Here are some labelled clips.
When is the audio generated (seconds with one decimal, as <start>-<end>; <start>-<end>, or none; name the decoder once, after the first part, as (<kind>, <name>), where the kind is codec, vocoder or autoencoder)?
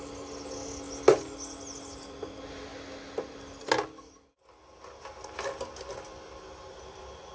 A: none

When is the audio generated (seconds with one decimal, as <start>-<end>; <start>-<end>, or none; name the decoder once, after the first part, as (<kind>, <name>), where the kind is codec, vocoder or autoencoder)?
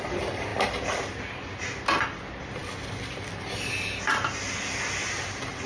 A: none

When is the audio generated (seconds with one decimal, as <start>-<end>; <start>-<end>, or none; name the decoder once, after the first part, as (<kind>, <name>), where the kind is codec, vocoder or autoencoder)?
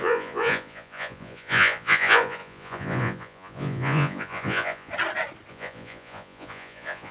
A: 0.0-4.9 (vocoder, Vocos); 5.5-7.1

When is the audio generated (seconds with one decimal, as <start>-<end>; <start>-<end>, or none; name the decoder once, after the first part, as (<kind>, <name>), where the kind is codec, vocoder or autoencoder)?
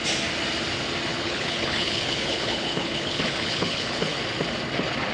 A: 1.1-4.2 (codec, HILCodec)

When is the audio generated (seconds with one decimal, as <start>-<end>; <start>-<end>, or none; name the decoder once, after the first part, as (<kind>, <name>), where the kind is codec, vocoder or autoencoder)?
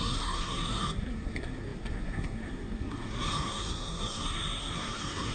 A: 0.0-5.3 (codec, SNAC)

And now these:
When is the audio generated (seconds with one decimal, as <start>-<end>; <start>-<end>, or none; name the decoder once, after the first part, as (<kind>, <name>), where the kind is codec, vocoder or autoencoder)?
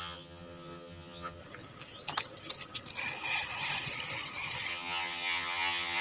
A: 0.0-1.4 (vocoder, HiFi-GAN); 4.7-6.0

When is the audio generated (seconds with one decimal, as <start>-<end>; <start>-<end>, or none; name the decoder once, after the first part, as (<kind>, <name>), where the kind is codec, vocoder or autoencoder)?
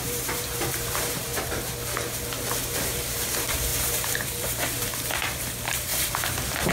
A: 0.0-1.3 (vocoder, BigVGAN v2); 2.6-6.7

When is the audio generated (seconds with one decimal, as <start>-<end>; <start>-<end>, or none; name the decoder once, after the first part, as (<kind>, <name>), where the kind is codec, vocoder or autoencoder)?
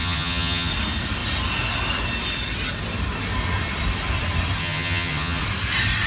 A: 0.0-0.7 (vocoder, HiFi-GAN); 4.6-5.4